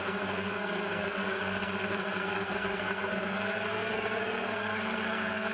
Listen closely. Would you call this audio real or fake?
fake